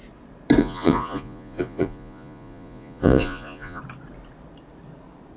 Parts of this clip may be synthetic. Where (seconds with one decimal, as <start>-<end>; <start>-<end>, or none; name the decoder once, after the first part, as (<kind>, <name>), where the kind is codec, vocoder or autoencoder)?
0.6-3.8 (vocoder, Vocos)